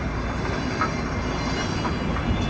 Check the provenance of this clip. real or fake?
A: real